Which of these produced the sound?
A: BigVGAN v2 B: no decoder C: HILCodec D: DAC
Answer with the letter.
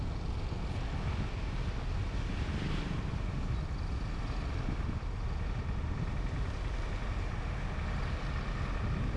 B